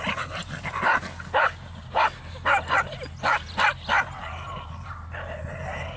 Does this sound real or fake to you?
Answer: real